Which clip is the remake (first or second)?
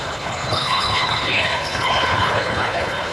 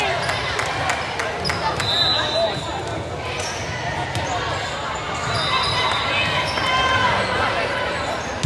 first